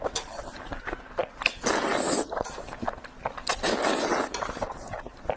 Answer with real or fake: real